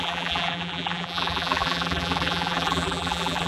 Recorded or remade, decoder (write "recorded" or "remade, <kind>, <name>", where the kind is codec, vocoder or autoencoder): remade, vocoder, BigVGAN v2